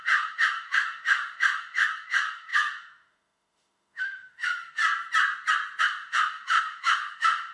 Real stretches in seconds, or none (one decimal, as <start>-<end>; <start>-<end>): 4.8-5.8